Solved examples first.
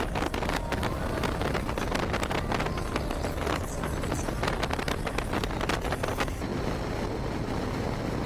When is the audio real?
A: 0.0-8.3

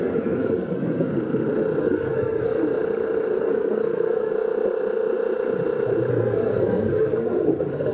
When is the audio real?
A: 1.1-1.8; 2.6-3.4; 4.3-6.1

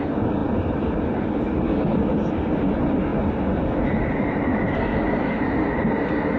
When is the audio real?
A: 0.0-6.4

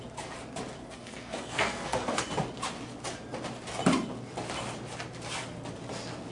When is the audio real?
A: 0.0-0.8; 2.2-6.3

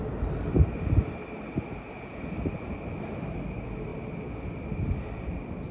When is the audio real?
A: 0.0-5.7

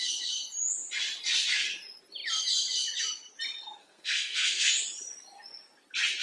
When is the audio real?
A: 0.0-3.8; 4.7-6.2